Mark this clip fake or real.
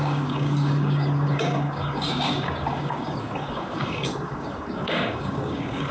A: fake